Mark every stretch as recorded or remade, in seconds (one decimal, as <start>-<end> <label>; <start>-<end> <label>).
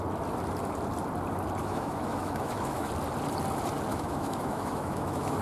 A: 0.0-1.6 recorded; 1.6-2.9 remade; 2.9-3.9 recorded; 3.9-5.4 remade